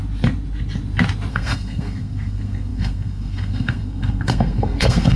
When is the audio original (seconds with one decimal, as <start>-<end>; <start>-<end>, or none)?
0.0-1.3